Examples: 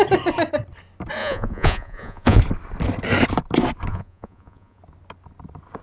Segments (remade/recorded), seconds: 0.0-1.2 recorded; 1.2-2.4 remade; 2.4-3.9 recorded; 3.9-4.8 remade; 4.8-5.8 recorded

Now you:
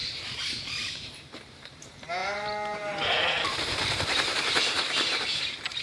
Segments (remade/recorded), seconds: 0.0-5.8 remade